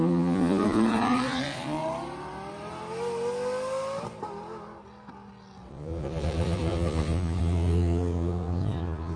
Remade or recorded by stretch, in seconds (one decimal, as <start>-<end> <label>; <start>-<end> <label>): 0.0-1.8 remade; 1.8-5.7 recorded; 5.7-9.2 remade